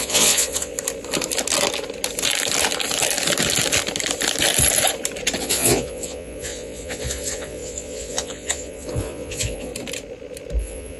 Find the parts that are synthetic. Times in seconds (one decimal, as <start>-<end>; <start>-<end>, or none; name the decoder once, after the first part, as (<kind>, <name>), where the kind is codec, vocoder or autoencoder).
0.0-0.7 (vocoder, Vocos); 5.4-9.7; 10.6-11.0